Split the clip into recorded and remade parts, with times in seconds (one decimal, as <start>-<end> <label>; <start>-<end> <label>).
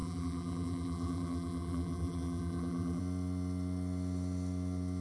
0.0-3.0 remade; 3.0-5.0 recorded